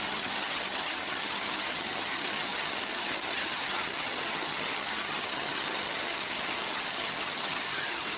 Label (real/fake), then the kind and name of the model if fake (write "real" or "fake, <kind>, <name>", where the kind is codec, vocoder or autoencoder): fake, vocoder, HiFi-GAN